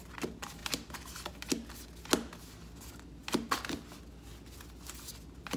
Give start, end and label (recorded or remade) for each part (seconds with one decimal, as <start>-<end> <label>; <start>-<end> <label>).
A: 0.0-5.6 recorded